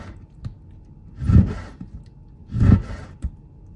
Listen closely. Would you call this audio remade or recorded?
recorded